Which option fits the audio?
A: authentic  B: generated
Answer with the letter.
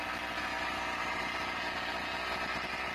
A